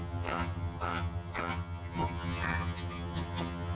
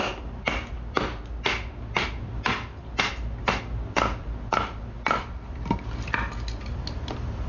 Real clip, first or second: second